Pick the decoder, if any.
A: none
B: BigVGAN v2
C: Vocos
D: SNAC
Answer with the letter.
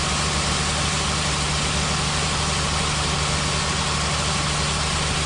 A